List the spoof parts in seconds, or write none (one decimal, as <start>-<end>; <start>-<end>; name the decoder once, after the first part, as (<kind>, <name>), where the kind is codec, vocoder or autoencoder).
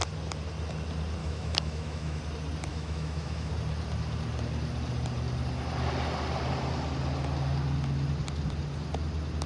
1.2-2.2 (autoencoder, DAC-VAE); 2.7-3.5